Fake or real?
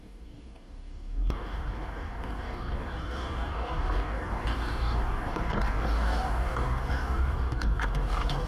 fake